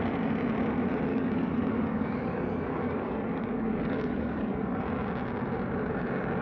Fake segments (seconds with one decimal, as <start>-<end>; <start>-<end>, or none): 1.1-4.8